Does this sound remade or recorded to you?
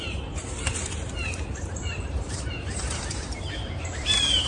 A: remade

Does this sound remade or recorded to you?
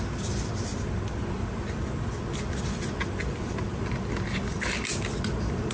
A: recorded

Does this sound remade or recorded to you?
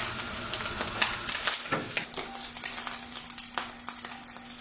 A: recorded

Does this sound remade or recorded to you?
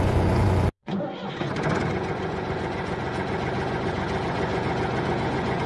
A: remade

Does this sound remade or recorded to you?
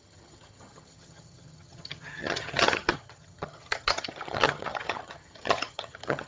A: remade